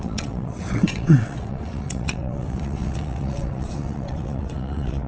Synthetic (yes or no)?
yes